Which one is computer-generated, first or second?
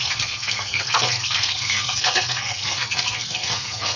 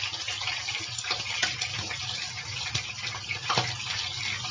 first